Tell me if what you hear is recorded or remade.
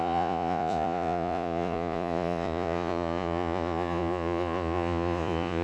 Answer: remade